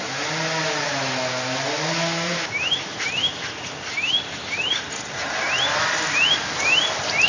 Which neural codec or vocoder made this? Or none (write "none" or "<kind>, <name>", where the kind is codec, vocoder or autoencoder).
none